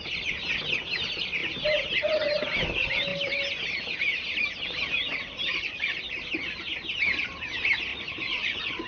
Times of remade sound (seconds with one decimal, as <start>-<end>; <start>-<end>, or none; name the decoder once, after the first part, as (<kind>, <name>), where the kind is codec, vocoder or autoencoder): 7.9-8.9 (vocoder, Vocos)

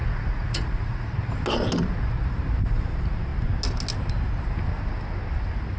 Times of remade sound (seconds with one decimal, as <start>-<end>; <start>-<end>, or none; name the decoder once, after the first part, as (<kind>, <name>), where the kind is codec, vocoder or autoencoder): 0.0-1.1 (vocoder, Vocos)

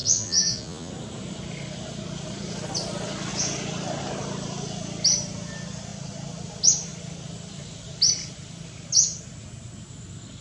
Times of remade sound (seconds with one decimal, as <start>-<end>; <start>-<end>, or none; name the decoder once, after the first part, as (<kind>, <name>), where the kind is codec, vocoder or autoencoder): 0.0-0.9 (vocoder, Vocos)

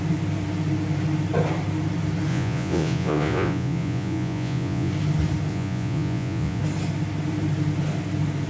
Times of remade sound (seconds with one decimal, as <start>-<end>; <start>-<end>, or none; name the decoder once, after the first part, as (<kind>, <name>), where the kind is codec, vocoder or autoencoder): 2.3-4.9 (vocoder, Vocos); 5.5-6.6

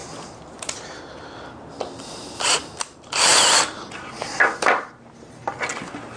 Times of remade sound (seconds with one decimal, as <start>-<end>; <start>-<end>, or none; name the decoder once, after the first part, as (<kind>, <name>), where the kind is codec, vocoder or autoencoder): none

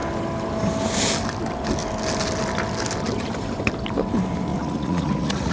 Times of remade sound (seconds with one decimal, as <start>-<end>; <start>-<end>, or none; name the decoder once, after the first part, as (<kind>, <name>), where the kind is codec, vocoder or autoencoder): 4.5-5.5 (vocoder, Vocos)

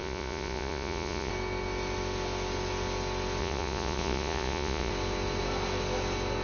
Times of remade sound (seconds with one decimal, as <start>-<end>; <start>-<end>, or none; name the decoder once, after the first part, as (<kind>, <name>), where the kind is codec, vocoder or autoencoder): 0.0-1.3 (vocoder, Vocos); 3.4-4.9

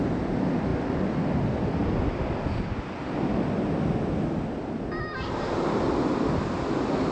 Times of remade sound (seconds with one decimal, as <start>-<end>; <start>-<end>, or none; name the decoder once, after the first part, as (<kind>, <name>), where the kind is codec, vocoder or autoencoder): none